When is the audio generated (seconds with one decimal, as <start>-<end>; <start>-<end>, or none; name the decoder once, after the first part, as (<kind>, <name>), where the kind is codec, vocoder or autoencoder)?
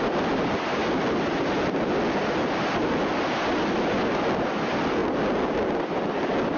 none